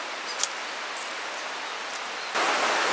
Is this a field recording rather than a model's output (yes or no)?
yes